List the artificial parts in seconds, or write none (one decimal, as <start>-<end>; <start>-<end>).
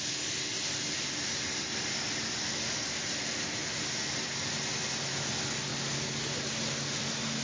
none